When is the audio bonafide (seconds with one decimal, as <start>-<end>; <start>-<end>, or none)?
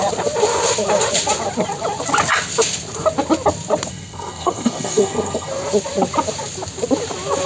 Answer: 0.0-3.9; 5.5-7.5